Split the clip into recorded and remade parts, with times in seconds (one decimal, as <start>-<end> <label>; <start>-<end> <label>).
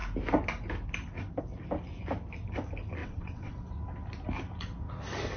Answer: 0.0-3.0 recorded; 3.0-3.7 remade; 3.7-5.4 recorded